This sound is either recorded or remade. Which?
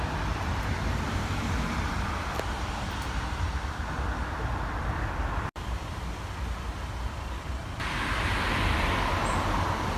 remade